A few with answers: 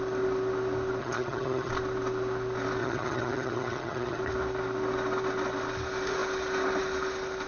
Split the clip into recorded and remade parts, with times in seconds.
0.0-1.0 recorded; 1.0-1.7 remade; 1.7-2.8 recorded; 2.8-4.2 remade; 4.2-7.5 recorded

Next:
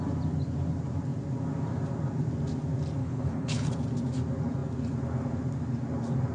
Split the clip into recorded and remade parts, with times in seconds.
0.0-3.0 recorded; 3.0-3.7 remade; 3.7-6.3 recorded